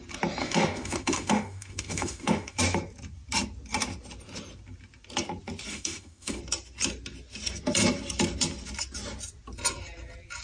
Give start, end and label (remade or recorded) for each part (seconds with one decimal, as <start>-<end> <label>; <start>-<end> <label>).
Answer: 0.0-0.4 recorded; 0.4-2.6 remade; 2.6-5.7 recorded; 5.7-6.4 remade; 6.4-10.4 recorded